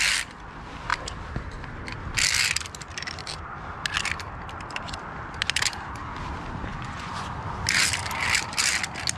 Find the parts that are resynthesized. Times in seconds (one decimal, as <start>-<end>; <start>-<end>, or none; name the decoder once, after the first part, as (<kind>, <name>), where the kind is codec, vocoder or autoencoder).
6.7-7.3 (vocoder, Vocos)